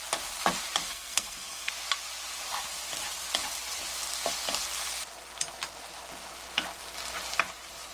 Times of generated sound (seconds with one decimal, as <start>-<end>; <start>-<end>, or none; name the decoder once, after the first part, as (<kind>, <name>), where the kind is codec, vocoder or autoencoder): 0.8-1.7 (codec, SNAC)